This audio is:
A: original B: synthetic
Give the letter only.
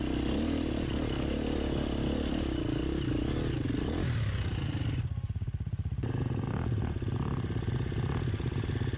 A